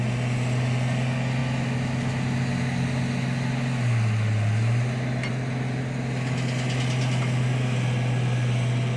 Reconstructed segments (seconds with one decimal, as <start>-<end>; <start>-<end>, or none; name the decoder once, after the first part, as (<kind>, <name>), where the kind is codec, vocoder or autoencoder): none